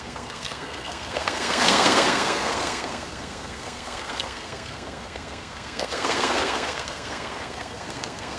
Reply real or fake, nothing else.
fake